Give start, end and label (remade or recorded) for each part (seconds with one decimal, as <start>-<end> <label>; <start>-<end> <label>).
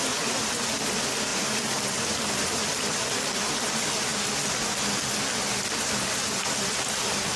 0.0-7.4 recorded